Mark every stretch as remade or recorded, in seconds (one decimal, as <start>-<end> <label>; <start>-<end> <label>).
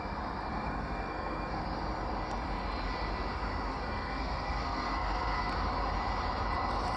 0.0-0.5 recorded; 0.5-1.6 remade; 1.6-3.7 recorded; 3.7-5.5 remade; 5.5-7.0 recorded